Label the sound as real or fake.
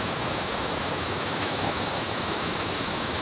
fake